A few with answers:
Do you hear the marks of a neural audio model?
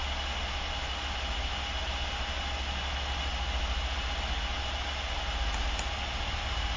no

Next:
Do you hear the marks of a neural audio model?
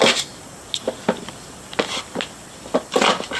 no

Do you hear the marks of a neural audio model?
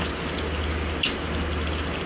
no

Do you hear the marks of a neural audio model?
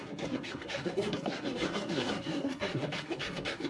yes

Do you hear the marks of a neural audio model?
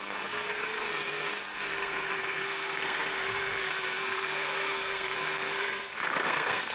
yes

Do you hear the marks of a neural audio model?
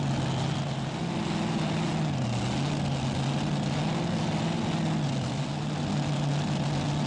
no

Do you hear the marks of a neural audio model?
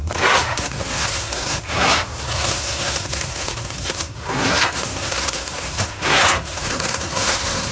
yes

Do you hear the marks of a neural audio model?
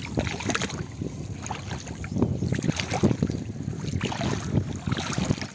no